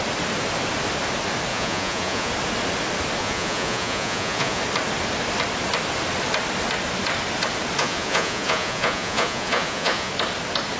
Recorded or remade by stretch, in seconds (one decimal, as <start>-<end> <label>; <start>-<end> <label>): 0.0-1.5 recorded; 1.5-2.3 remade; 2.3-3.2 recorded; 3.2-4.6 remade; 4.6-7.8 recorded; 7.8-10.1 remade; 10.1-10.8 recorded